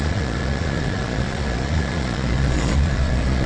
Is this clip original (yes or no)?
no